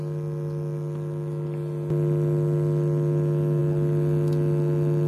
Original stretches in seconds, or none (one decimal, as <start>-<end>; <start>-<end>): 0.0-5.1